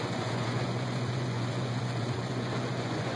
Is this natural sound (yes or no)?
no